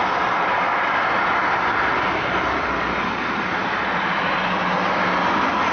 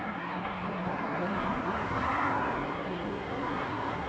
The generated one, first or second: second